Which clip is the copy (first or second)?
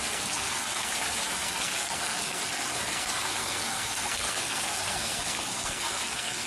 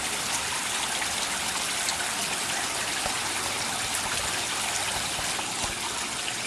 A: first